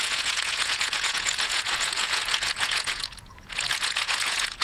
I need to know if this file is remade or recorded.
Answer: remade